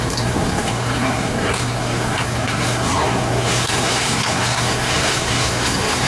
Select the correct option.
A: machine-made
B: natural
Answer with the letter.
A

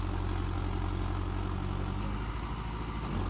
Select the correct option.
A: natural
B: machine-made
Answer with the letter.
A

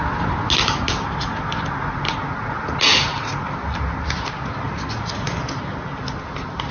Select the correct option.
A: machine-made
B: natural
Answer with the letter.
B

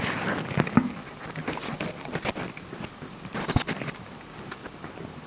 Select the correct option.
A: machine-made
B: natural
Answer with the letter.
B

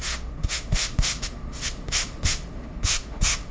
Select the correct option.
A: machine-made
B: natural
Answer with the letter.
A